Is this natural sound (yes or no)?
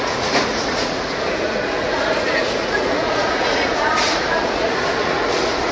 no